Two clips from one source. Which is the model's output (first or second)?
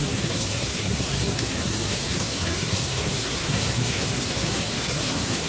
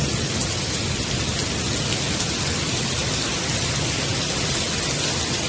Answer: first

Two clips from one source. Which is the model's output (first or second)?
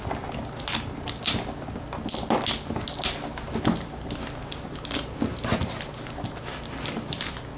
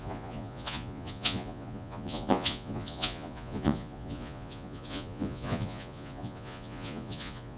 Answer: second